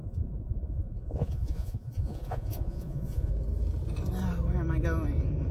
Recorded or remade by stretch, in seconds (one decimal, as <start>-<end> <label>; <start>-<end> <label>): 0.0-3.3 remade; 3.3-5.5 recorded